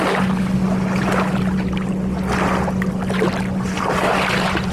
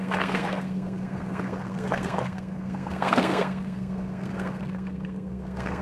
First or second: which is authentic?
first